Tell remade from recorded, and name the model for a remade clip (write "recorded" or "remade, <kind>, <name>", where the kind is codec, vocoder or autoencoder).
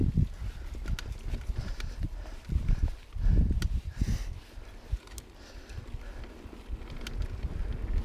recorded